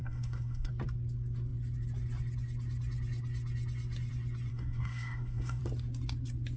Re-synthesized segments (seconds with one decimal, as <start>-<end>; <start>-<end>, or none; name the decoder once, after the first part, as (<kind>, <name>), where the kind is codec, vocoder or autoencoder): 0.0-0.7 (codec, SNAC); 4.5-5.6

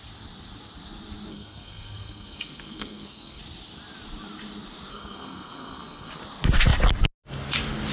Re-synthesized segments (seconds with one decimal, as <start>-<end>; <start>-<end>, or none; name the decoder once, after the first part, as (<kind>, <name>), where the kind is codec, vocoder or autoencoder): 1.3-3.4 (codec, SNAC); 4.9-6.1

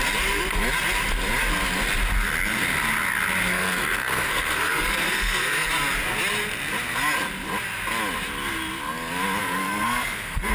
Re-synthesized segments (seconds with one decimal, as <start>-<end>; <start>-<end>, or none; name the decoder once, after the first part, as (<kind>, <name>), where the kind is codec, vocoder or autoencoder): 3.5-5.7 (codec, SNAC); 9.4-10.5

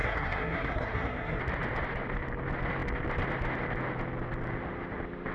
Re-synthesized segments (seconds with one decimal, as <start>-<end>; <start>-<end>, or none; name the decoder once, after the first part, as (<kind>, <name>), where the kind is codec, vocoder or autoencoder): 0.0-1.4 (codec, SNAC)